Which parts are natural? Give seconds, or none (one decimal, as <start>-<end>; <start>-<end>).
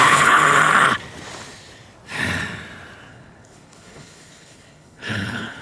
0.4-3.1